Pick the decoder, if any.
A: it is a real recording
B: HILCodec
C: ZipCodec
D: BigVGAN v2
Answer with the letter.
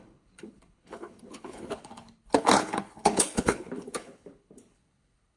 B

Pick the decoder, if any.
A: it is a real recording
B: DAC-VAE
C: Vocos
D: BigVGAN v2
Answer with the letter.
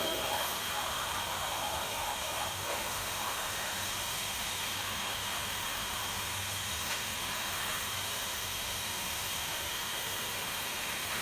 B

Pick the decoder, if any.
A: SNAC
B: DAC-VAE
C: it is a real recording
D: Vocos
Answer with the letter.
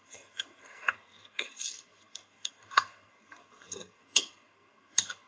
A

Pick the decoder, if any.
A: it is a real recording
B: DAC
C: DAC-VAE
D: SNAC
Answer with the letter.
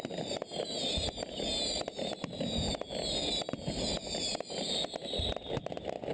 A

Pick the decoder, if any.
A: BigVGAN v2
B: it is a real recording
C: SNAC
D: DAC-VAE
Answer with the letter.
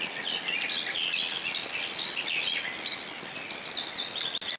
B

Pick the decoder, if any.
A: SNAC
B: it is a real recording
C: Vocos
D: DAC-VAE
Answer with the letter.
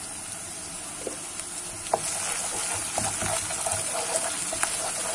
B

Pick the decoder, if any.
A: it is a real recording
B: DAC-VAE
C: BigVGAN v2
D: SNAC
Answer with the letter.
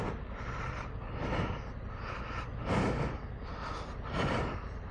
A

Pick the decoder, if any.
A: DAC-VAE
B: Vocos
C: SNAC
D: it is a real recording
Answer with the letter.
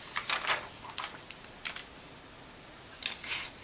D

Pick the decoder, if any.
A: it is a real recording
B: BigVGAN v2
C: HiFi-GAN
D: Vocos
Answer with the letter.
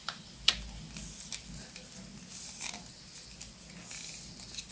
A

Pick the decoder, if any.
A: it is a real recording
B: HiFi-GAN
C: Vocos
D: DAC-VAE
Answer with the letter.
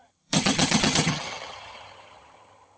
B